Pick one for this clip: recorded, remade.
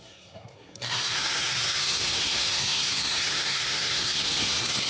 remade